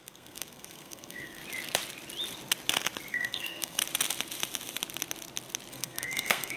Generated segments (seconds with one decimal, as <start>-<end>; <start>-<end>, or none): 0.0-1.4; 3.1-3.8; 5.7-6.6